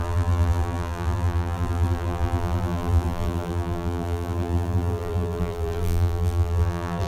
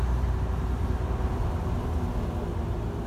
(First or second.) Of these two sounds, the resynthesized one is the first